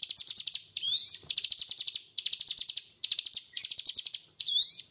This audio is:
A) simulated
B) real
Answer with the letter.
A